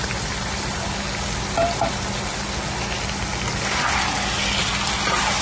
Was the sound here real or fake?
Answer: real